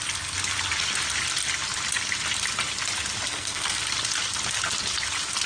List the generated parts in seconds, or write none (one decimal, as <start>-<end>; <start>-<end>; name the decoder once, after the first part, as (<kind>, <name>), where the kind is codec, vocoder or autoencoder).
3.3-3.8 (codec, SNAC)